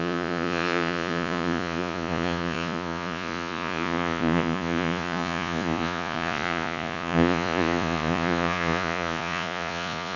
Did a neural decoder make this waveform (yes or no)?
yes